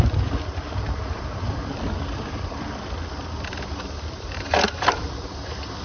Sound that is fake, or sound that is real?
fake